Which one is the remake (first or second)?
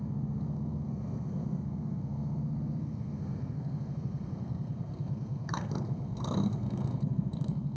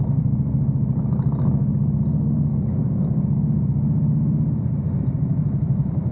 first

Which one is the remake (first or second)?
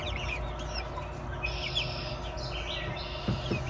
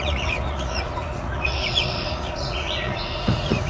second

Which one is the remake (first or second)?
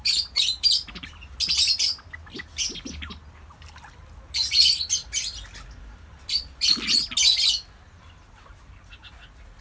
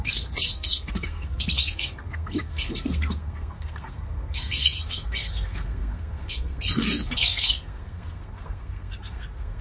second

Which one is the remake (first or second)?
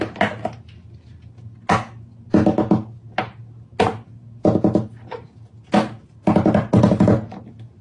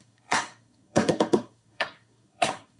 second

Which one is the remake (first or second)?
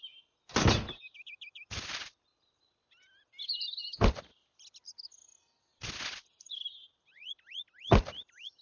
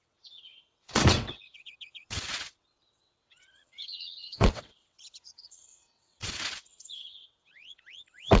second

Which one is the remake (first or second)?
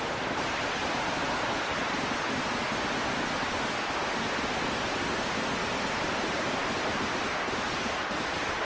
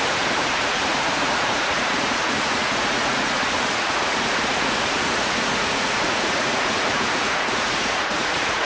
second